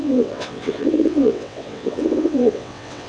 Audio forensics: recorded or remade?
remade